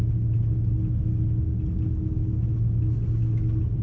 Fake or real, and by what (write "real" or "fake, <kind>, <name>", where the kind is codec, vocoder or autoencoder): real